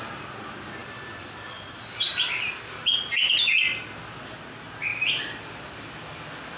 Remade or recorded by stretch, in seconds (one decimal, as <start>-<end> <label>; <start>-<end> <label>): 0.0-0.8 recorded; 0.8-2.8 remade; 2.8-4.9 recorded; 4.9-5.9 remade; 5.9-6.6 recorded